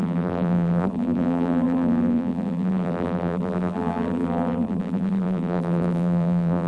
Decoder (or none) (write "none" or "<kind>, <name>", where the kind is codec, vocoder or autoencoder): vocoder, BigVGAN v2